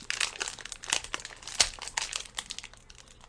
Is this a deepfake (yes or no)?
no